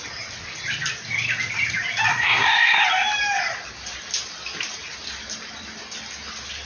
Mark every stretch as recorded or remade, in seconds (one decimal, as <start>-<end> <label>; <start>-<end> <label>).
0.0-2.1 recorded; 2.1-2.8 remade; 2.8-6.6 recorded